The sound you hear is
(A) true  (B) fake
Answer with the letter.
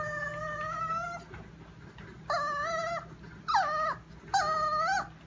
A